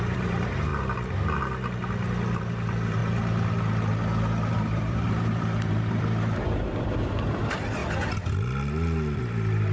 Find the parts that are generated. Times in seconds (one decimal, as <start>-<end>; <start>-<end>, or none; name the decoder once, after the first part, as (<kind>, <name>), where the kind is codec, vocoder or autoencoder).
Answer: 0.0-0.7 (vocoder, BigVGAN v2); 2.4-3.0; 4.5-7.8; 9.2-9.7